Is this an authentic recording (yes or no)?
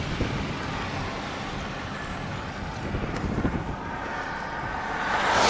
yes